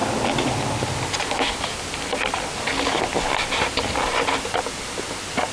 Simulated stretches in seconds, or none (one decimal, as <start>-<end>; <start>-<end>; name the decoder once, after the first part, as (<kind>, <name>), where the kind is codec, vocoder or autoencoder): none